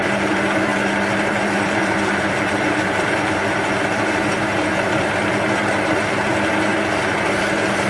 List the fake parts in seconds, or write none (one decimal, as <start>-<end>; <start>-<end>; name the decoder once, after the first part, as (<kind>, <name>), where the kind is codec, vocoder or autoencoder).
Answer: 0.0-0.7 (vocoder, BigVGAN v2); 1.3-4.7; 6.1-6.7; 7.3-7.9